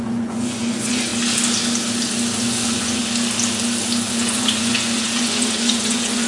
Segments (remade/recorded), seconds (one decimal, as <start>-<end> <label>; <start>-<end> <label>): 0.0-1.1 remade; 1.1-2.4 recorded; 2.4-3.0 remade; 3.0-4.1 recorded; 4.1-6.3 remade